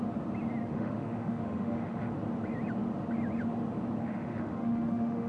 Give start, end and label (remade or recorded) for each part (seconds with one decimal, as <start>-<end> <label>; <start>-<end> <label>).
0.0-0.6 recorded; 0.6-2.1 remade; 2.1-4.0 recorded; 4.0-5.3 remade